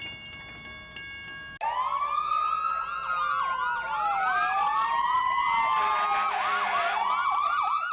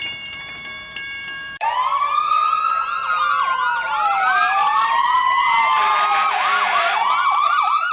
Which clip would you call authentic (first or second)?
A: first